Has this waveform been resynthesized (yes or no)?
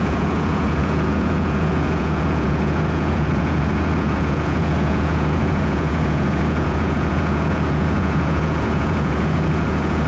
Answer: yes